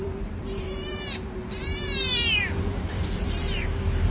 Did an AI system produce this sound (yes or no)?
yes